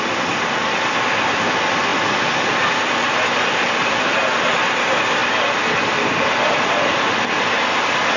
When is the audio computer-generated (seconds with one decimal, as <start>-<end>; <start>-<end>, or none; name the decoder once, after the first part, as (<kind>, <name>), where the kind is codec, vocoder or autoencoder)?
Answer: none